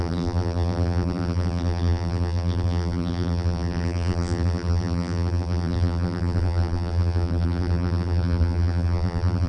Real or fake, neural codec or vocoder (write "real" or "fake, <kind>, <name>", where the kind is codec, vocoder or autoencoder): fake, vocoder, BigVGAN v2